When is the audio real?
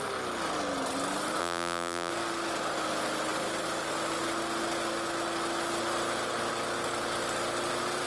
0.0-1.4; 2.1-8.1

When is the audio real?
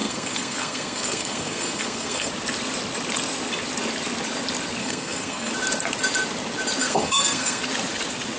2.3-4.8; 5.5-6.8; 7.6-8.4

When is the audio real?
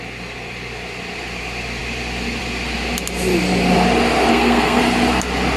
0.0-4.3; 4.8-5.6